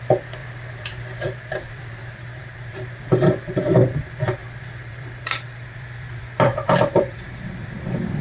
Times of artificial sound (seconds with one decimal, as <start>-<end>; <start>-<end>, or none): 0.4-3.0; 4.4-8.2